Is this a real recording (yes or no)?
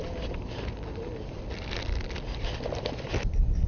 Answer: yes